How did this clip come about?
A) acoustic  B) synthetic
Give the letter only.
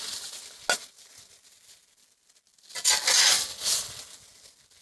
A